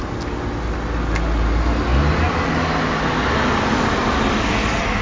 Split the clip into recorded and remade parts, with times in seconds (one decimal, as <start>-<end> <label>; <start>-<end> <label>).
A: 0.0-5.0 recorded